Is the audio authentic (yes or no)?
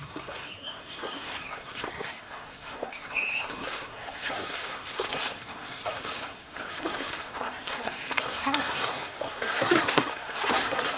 no